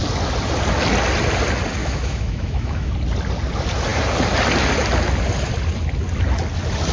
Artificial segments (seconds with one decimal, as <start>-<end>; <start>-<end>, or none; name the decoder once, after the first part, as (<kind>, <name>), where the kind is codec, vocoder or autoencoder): 1.8-2.9 (autoencoder, DAC-VAE)